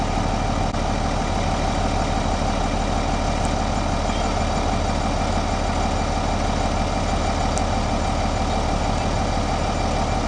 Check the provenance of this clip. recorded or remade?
recorded